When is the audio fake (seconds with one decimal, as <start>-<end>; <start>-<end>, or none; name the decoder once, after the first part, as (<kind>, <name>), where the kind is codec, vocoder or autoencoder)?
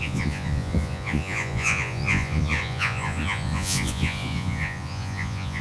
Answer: 0.0-5.6 (vocoder, Vocos)